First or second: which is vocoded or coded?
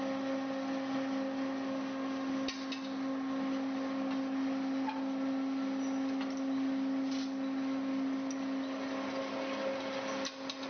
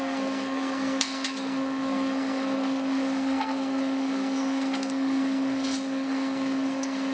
second